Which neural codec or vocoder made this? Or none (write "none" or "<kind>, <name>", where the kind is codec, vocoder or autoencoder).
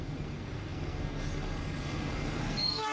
codec, SNAC